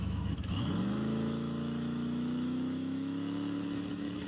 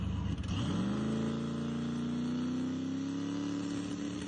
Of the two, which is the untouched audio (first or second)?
second